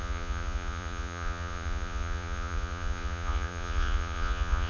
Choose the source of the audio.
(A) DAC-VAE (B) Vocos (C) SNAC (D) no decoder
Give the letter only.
B